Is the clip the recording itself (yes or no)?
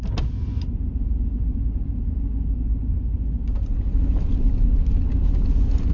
yes